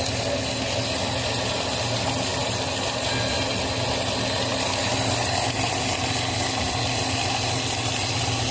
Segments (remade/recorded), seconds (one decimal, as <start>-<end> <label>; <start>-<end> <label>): 0.0-8.5 recorded